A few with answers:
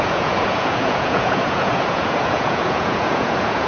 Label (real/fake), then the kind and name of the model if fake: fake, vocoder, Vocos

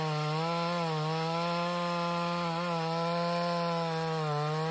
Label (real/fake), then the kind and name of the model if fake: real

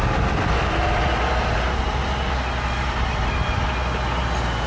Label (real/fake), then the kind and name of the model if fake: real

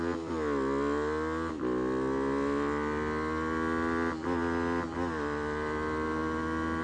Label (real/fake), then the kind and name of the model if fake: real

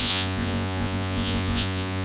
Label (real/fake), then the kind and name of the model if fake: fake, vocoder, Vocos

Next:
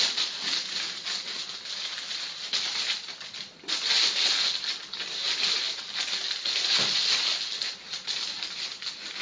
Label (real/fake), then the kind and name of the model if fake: real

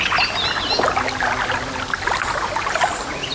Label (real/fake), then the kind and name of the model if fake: real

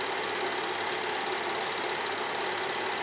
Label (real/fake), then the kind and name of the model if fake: real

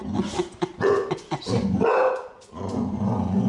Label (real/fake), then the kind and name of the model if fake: fake, vocoder, Vocos